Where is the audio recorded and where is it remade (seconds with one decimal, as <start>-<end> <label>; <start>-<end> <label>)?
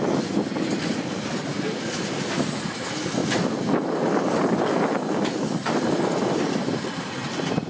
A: 0.0-7.7 recorded